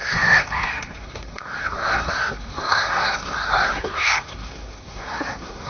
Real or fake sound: fake